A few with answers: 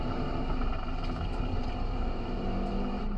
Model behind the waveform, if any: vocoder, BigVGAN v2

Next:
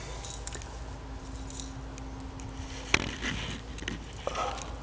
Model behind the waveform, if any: none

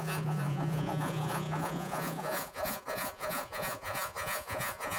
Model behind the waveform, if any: vocoder, Vocos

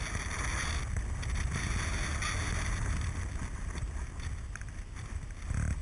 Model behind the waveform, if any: none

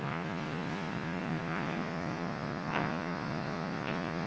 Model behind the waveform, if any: vocoder, Vocos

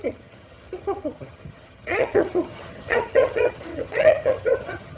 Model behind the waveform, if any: vocoder, HiFi-GAN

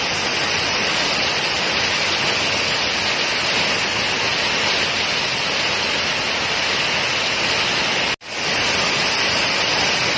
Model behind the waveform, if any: none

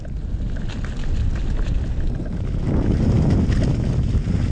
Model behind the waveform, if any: none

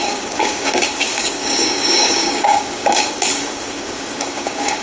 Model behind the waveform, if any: codec, DAC